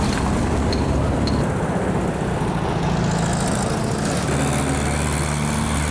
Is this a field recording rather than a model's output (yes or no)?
yes